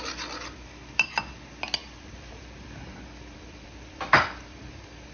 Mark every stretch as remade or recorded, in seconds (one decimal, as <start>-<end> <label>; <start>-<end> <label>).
0.0-1.8 recorded; 1.8-5.1 remade